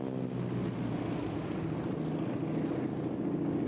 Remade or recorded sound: recorded